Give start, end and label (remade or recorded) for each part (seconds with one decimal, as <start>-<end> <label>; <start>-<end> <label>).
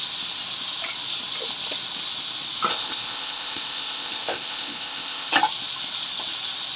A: 0.0-2.7 recorded; 2.7-5.3 remade; 5.3-6.8 recorded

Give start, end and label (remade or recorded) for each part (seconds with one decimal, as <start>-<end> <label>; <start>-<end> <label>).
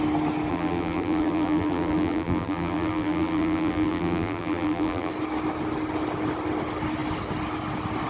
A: 0.0-0.5 recorded; 0.5-5.1 remade; 5.1-8.1 recorded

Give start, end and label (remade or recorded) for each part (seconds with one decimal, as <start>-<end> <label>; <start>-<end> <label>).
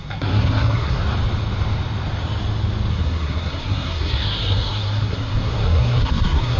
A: 0.0-1.0 remade; 1.0-2.9 recorded; 2.9-6.6 remade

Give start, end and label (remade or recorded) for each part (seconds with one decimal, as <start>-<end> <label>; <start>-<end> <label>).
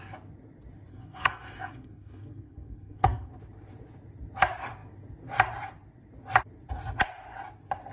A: 0.0-0.9 recorded; 0.9-3.3 remade; 3.3-7.9 recorded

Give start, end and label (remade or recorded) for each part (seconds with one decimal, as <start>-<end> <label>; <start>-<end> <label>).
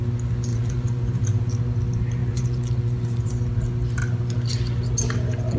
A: 0.0-0.5 recorded; 0.5-1.2 remade; 1.2-2.2 recorded; 2.2-3.3 remade; 3.3-5.6 recorded